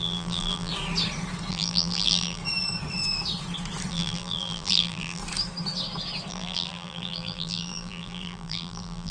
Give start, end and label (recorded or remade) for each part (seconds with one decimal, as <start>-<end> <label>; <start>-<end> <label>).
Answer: 0.0-0.7 remade; 0.7-1.5 recorded; 1.5-2.4 remade; 2.4-3.9 recorded; 3.9-5.2 remade; 5.2-6.3 recorded; 6.3-9.1 remade